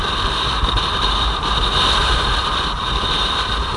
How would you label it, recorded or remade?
remade